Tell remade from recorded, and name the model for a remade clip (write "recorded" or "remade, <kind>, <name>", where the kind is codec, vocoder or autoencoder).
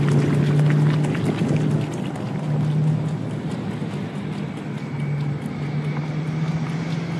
recorded